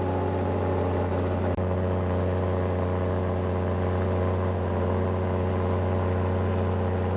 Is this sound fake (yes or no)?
no